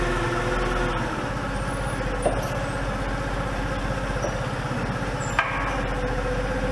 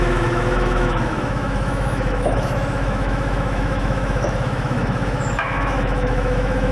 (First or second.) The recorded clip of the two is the first